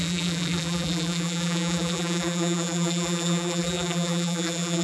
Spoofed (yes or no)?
yes